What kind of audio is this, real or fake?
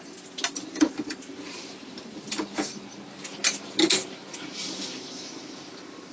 real